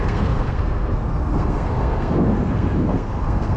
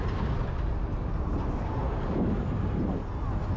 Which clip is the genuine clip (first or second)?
second